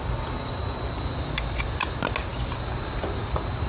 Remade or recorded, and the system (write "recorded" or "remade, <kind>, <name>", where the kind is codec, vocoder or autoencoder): recorded